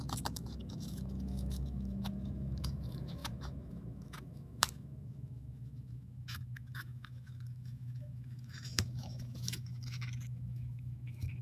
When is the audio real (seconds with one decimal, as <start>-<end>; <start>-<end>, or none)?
none

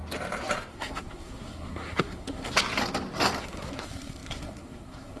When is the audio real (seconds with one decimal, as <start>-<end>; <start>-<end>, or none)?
0.0-0.7; 2.6-3.4

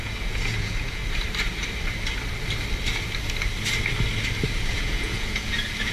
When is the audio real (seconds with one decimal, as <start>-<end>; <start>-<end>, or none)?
1.0-4.5

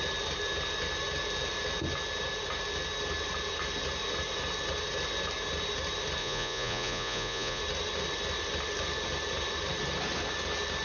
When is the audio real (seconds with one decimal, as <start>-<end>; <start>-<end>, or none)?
0.0-6.2; 7.6-10.8

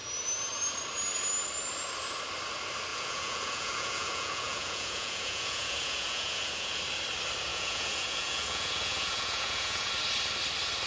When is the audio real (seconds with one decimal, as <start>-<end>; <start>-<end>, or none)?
0.0-2.9; 6.8-7.5; 9.9-10.9

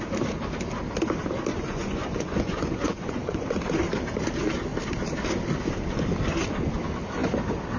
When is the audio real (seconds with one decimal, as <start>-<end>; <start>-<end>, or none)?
0.0-1.5; 3.6-7.8

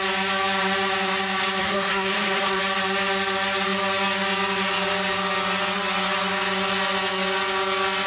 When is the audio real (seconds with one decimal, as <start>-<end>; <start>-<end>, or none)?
0.0-1.6; 2.6-8.1